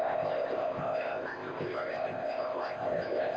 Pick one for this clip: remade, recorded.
remade